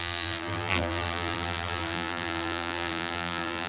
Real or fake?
fake